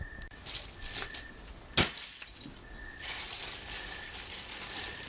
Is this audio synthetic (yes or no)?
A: no